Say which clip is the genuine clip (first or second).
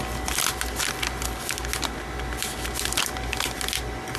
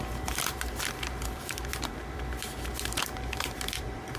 first